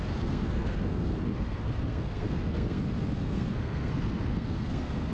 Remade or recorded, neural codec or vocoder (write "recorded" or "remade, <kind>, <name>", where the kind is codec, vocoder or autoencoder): remade, codec, SNAC